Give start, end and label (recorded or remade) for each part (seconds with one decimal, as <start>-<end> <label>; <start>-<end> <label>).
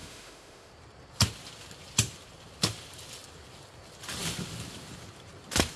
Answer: 0.0-0.7 remade; 0.7-5.8 recorded